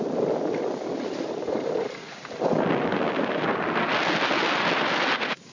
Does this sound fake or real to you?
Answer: real